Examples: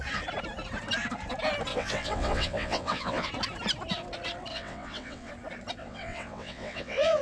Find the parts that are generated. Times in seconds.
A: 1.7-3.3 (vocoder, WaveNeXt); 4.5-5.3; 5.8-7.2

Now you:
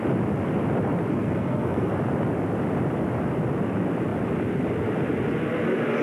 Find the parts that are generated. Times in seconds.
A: 1.1-1.9 (codec, SNAC)